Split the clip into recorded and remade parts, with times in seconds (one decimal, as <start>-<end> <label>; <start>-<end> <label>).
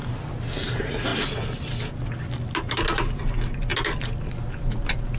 0.0-5.2 recorded